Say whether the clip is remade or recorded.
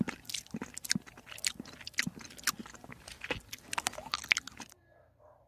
recorded